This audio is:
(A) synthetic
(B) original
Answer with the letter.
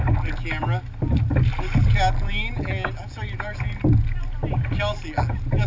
B